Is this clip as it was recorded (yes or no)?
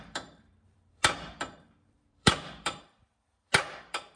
no